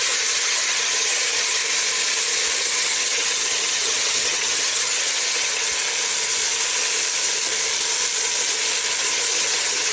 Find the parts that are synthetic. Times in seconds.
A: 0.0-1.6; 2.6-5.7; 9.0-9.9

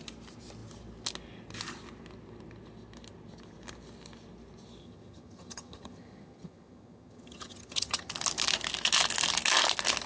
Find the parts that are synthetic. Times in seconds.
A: 4.8-8.1

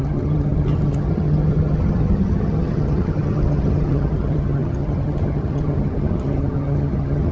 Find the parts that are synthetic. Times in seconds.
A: 0.0-7.3

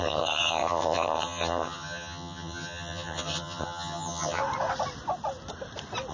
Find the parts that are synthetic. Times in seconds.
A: 0.0-4.4

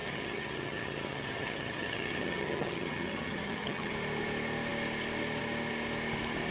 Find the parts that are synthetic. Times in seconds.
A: 0.0-3.9

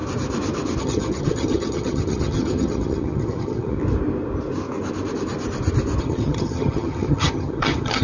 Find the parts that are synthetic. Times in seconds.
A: 0.8-3.8; 6.0-8.0

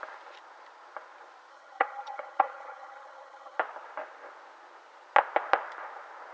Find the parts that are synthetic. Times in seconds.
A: 1.5-3.6

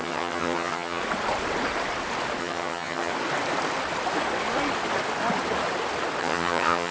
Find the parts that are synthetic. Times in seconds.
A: 0.0-1.0; 2.4-3.1; 6.2-6.9